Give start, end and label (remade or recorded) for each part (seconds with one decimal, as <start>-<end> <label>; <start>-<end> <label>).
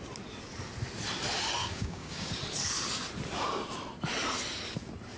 0.0-1.6 recorded; 1.6-2.4 remade; 2.4-5.2 recorded